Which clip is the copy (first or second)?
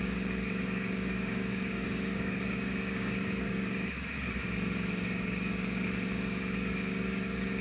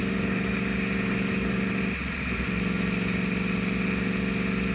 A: first